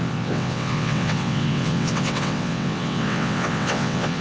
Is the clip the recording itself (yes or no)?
no